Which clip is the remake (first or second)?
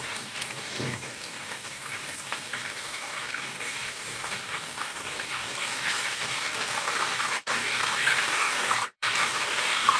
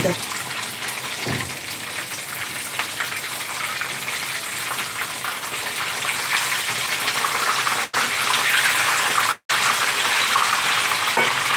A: first